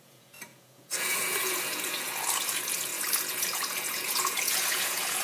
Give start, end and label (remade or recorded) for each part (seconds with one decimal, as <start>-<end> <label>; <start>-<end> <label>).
0.0-5.2 remade

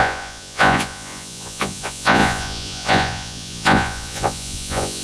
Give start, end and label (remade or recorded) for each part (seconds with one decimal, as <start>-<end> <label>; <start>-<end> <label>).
0.0-5.0 remade

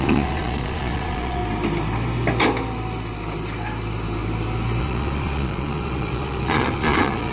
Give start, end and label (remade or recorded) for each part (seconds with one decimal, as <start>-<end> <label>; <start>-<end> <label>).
0.0-1.4 remade; 1.4-4.8 recorded; 4.8-7.3 remade